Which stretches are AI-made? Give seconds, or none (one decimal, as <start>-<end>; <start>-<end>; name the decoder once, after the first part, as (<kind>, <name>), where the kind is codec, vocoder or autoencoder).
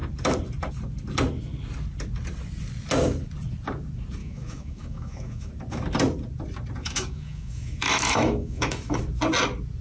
4.2-5.5 (autoencoder, DAC-VAE); 6.8-9.0